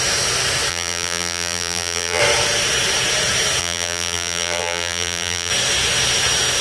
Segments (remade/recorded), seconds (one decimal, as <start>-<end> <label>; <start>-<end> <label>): 0.0-0.7 recorded; 0.7-2.2 remade; 2.2-3.6 recorded; 3.6-5.5 remade; 5.5-6.6 recorded